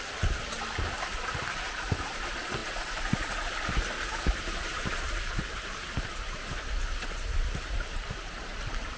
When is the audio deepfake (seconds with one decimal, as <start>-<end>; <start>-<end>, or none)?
0.0-2.6; 4.2-4.9; 7.3-9.0